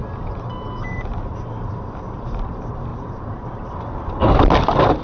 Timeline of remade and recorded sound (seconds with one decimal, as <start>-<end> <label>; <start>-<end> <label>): 0.0-1.3 recorded; 1.3-2.5 remade; 2.5-2.9 recorded; 2.9-3.8 remade; 3.8-5.0 recorded